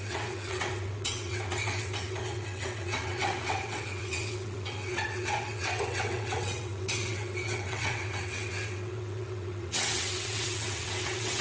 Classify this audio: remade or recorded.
remade